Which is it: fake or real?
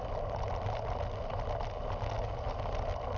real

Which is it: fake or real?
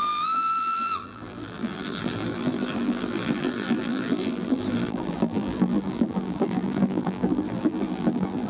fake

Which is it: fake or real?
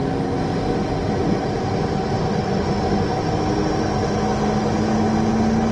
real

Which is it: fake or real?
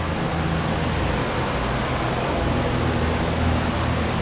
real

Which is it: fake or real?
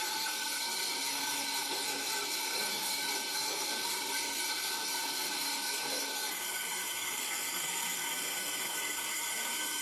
fake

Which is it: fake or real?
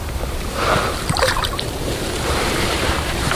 fake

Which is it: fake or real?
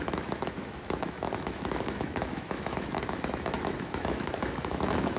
fake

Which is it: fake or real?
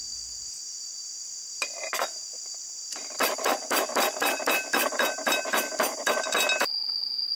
real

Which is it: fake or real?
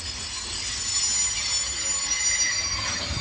real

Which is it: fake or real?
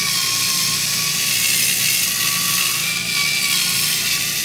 real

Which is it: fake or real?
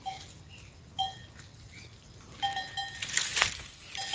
real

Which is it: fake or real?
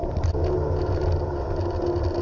real